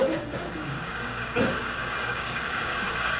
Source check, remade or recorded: remade